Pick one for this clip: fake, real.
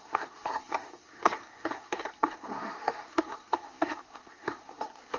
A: fake